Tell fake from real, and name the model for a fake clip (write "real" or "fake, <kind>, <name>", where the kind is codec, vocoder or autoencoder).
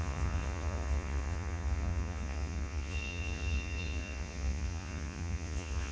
fake, vocoder, Vocos